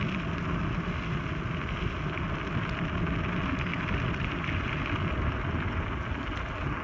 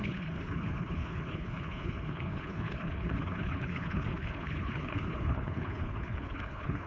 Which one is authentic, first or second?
first